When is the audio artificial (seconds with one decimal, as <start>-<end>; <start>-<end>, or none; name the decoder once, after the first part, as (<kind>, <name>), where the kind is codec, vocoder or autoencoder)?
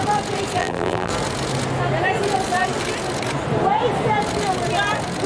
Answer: 0.6-1.1 (vocoder, BigVGAN v2)